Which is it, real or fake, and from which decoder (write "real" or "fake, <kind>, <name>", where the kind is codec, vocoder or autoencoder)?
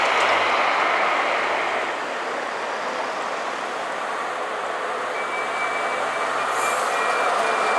real